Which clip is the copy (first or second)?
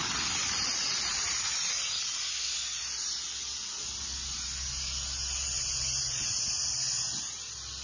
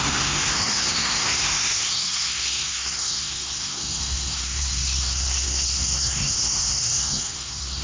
second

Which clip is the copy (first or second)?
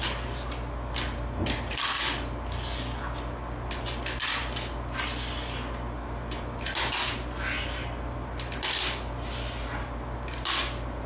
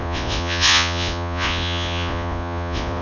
second